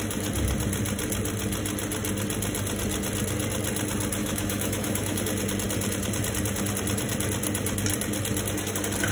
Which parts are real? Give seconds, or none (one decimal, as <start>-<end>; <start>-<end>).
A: 0.0-4.2; 5.2-9.1